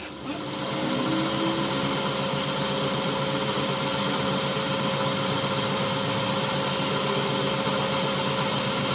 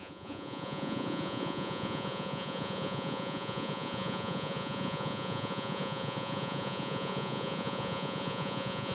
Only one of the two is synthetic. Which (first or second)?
second